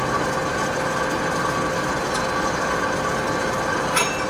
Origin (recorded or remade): recorded